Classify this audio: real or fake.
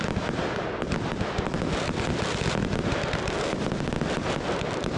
real